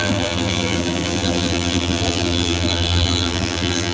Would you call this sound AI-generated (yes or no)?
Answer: yes